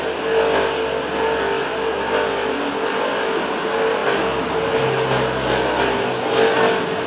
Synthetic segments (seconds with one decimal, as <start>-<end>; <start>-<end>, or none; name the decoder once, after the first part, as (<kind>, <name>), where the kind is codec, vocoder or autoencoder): none